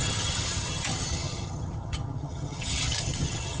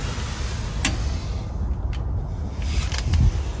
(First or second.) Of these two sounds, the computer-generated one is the first